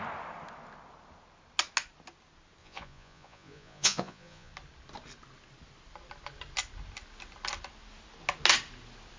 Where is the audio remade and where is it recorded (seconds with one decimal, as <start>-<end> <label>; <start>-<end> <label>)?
0.0-2.6 recorded; 2.6-4.5 remade; 4.5-9.2 recorded